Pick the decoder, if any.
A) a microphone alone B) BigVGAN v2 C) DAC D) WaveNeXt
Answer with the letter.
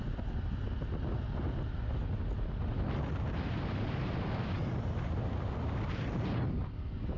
A